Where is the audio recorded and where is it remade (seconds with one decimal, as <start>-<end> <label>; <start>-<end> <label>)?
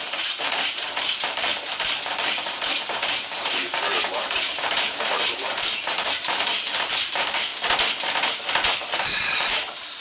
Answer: 0.0-7.5 remade; 7.5-9.0 recorded; 9.0-10.0 remade